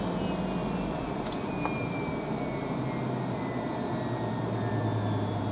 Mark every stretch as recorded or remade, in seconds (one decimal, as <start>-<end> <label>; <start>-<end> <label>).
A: 0.0-0.6 recorded; 0.6-1.5 remade; 1.5-5.5 recorded